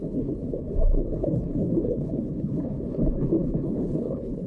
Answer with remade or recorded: remade